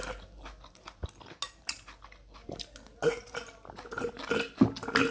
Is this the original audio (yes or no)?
yes